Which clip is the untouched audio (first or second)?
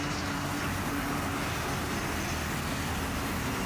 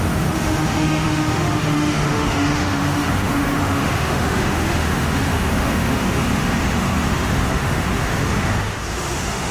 first